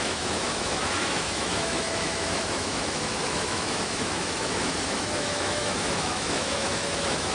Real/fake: fake